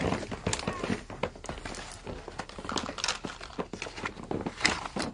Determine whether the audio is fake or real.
real